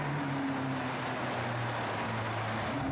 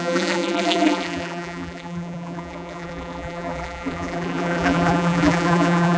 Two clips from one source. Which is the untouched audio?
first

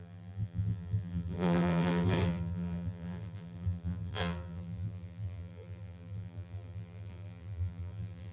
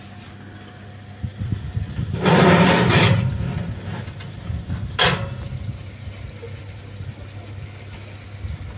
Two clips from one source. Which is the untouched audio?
second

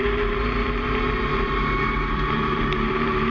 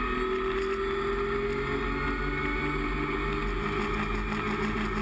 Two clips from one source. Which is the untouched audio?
second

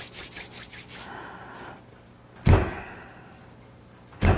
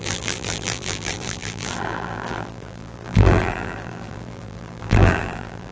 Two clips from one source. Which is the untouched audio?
first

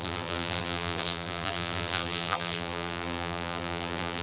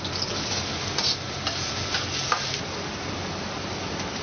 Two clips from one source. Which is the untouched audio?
second